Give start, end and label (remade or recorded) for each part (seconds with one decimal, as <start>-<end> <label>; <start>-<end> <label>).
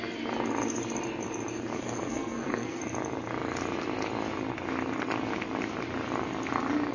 0.0-1.7 recorded; 1.7-2.8 remade; 2.8-6.9 recorded